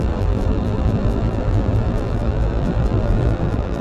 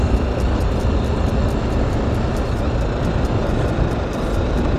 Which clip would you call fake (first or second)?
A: first